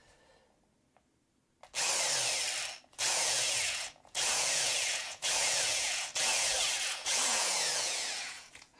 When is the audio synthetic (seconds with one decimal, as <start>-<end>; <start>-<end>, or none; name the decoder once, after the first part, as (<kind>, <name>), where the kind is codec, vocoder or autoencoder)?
2.9-8.8 (vocoder, Vocos)